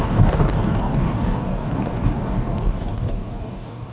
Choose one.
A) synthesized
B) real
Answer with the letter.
A